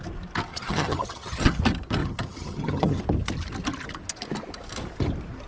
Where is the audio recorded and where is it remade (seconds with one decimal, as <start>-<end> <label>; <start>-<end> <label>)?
0.0-0.5 recorded; 0.5-1.6 remade; 1.6-2.0 recorded; 2.0-3.0 remade; 3.0-5.5 recorded